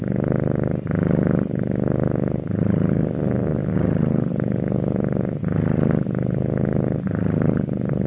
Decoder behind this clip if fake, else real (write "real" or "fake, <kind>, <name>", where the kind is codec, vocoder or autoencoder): real